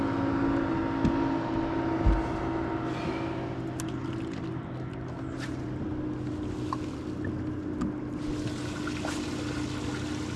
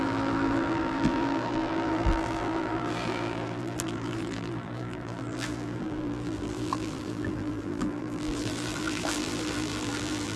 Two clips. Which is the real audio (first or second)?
first